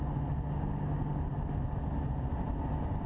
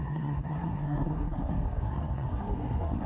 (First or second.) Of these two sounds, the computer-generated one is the second